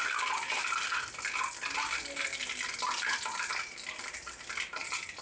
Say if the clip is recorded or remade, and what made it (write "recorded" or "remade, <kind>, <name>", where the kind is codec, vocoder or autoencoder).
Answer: recorded